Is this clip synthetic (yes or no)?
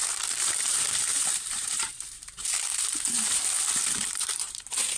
yes